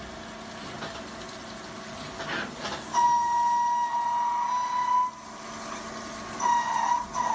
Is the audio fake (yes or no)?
no